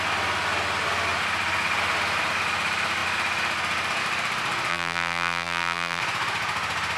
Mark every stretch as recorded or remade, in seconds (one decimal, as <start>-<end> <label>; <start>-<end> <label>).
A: 0.0-4.7 recorded; 4.7-6.0 remade; 6.0-7.0 recorded